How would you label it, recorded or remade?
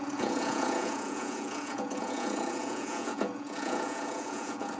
remade